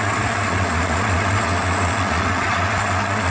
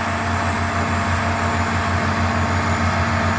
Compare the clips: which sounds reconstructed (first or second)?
first